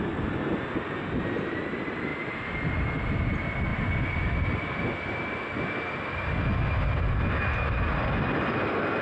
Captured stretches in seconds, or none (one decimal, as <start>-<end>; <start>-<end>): 0.0-9.0